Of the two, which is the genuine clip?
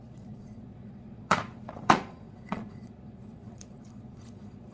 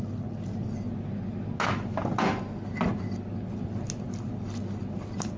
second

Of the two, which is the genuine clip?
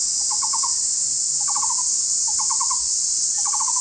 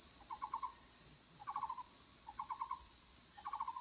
first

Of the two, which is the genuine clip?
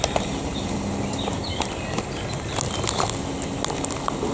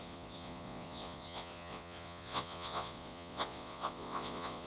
first